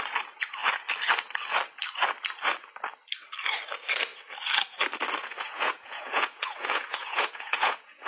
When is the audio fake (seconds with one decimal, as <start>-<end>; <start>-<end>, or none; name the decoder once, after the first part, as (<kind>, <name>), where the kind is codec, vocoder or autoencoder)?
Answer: 5.2-8.1 (vocoder, Vocos)